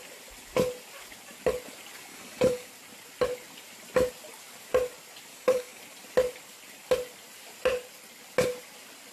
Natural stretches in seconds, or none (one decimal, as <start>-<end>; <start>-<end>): 0.0-2.1; 2.7-5.3; 5.8-9.1